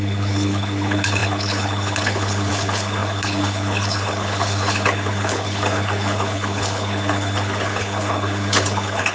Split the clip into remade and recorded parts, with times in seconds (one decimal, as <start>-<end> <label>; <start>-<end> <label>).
0.0-9.1 remade